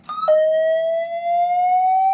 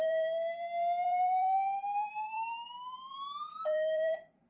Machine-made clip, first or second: second